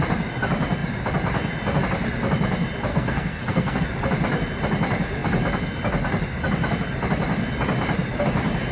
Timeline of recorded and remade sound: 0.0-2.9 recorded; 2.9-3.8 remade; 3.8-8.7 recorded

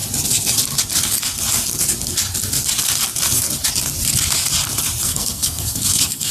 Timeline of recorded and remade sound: 0.0-5.0 recorded; 5.0-6.3 remade

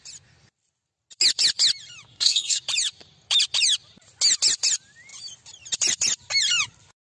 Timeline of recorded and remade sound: 0.0-2.1 recorded; 2.1-2.6 remade; 2.6-7.2 recorded

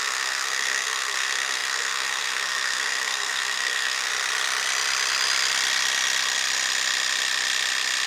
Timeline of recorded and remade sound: 0.0-4.1 remade; 4.1-8.1 recorded

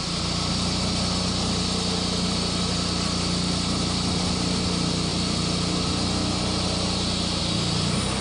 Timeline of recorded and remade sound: 0.0-8.2 recorded